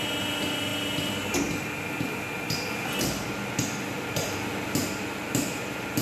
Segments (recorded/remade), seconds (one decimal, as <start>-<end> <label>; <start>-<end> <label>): 0.0-6.0 recorded